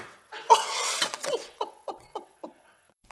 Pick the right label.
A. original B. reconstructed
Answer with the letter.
B